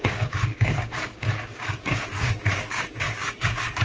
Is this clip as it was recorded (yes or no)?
no